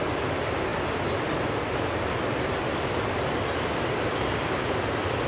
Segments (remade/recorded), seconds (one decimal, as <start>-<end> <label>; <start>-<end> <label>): 0.0-5.3 recorded